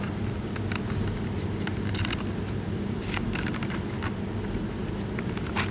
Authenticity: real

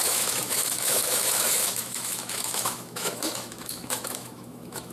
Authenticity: fake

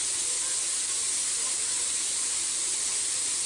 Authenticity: real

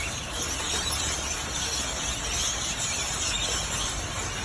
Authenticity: real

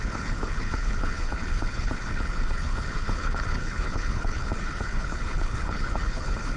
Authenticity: fake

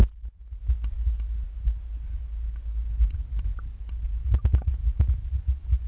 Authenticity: real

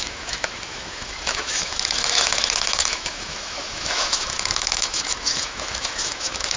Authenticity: fake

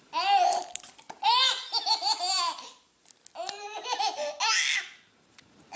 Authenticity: real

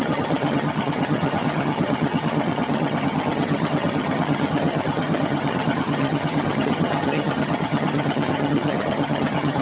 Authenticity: fake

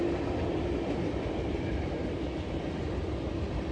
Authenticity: real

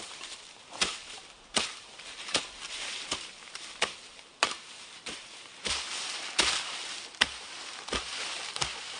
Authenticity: fake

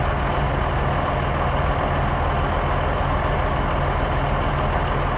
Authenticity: real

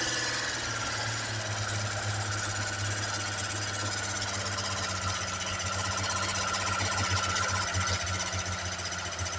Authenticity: real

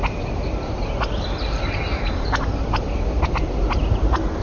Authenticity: real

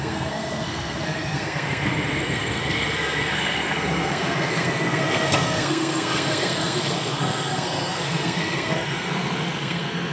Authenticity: fake